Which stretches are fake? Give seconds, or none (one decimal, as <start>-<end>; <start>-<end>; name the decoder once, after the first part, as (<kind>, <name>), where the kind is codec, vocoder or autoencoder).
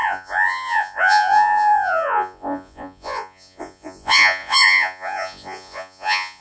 0.0-6.4 (vocoder, Vocos)